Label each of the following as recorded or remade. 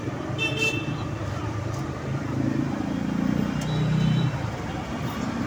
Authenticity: remade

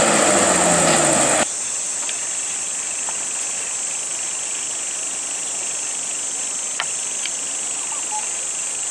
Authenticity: recorded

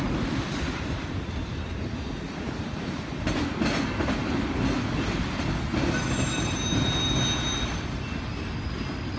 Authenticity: recorded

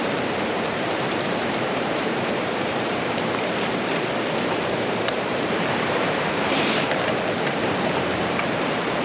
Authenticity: remade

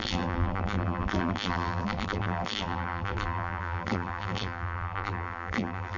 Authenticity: remade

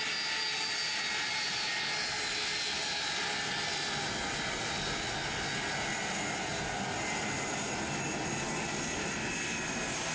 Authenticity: recorded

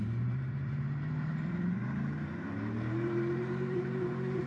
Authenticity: remade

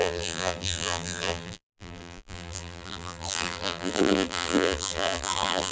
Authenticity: remade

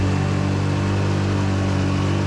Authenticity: recorded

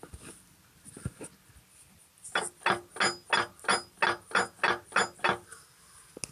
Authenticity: recorded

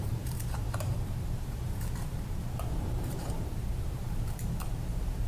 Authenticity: remade